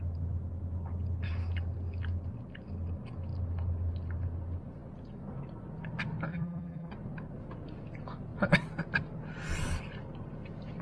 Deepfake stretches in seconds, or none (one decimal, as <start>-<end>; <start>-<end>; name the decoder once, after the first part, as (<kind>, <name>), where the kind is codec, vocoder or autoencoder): 6.3-6.9 (vocoder, BigVGAN v2)